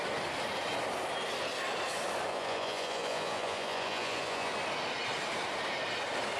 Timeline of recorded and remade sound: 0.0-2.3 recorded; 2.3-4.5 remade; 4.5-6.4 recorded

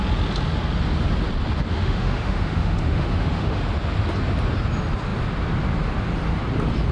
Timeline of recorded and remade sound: 0.0-1.7 recorded; 1.7-3.6 remade; 3.6-6.9 recorded

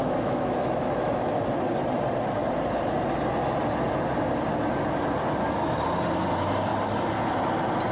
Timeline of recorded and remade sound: 0.0-1.3 remade; 1.3-7.9 recorded